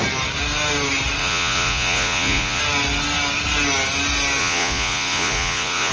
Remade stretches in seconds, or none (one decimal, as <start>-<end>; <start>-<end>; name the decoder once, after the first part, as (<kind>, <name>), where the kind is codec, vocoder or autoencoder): 1.2-2.6 (vocoder, Vocos); 4.4-5.9

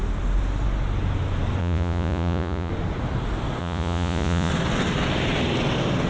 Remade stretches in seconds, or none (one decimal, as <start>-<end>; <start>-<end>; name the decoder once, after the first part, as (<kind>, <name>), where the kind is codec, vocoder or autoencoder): 1.6-2.7 (vocoder, Vocos); 3.6-4.5